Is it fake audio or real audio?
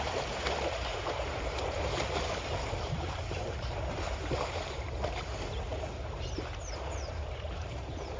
fake